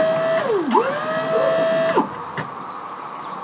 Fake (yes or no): no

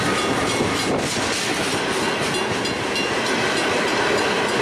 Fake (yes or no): no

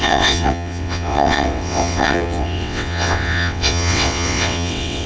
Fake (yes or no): yes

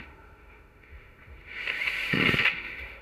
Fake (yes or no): yes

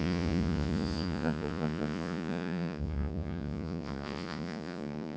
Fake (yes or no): yes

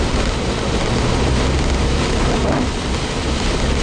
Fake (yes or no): no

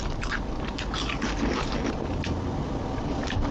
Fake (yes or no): no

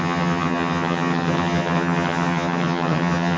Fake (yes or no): yes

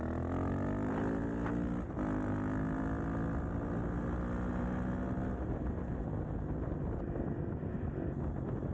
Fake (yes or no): no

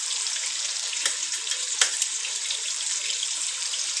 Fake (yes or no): yes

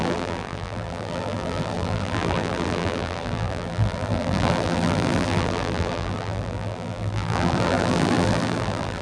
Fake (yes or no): yes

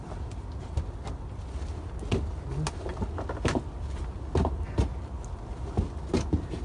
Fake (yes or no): no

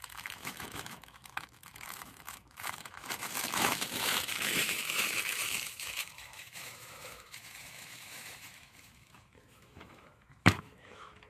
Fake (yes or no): yes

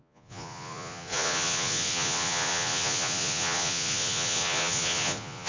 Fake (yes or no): yes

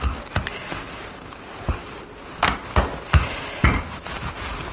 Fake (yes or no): no